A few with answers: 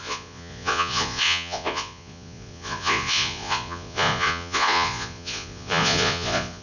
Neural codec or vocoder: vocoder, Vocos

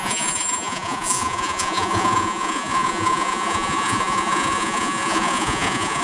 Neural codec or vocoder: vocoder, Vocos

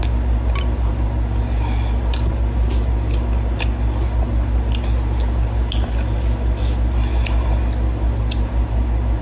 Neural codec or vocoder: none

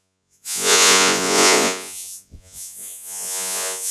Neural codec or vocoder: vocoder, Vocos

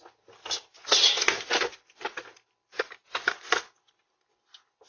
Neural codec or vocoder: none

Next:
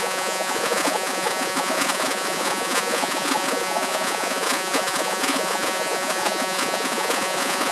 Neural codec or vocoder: vocoder, Vocos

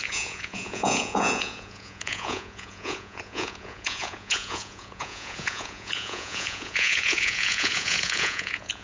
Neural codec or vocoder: vocoder, Vocos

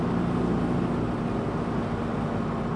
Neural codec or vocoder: none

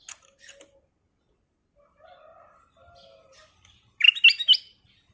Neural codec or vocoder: none